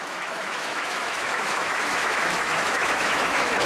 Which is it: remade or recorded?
remade